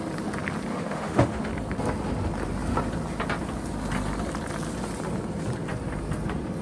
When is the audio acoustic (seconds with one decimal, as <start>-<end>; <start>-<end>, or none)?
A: 0.0-0.7; 1.5-6.6